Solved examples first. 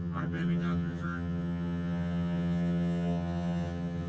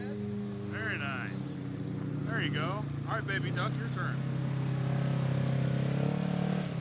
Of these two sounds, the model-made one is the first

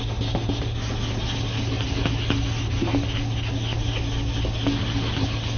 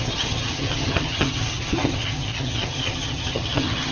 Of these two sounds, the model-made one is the second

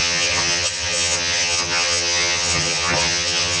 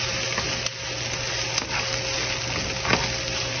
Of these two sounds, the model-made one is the first